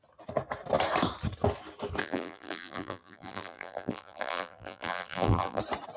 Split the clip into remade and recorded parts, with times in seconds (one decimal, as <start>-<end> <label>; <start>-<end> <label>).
0.0-2.0 recorded; 2.0-5.6 remade; 5.6-6.0 recorded